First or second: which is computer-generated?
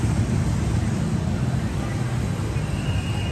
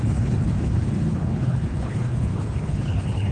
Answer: second